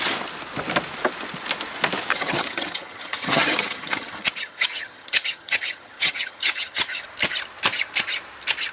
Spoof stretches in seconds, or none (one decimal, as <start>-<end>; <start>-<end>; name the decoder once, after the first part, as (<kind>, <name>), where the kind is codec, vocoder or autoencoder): 2.1-7.0 (vocoder, HiFi-GAN)